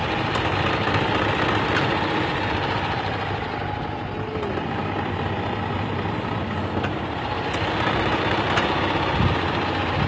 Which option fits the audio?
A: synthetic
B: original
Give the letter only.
B